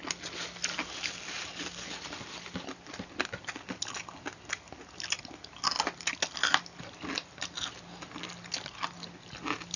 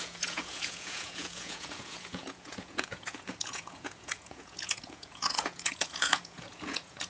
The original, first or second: first